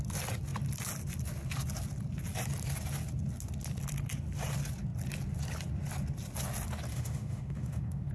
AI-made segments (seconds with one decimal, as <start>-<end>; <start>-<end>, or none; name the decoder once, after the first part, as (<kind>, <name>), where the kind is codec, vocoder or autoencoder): 6.9-8.1 (autoencoder, DAC-VAE)